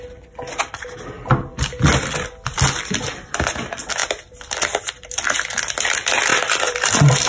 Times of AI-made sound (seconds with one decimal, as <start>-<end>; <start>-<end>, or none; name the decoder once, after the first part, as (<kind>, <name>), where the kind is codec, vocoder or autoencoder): 6.3-7.3 (vocoder, BigVGAN v2)